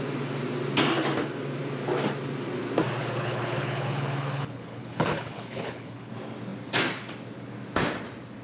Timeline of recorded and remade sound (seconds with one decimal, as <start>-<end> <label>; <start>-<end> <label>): 0.0-3.0 recorded; 3.0-6.1 remade; 6.1-8.4 recorded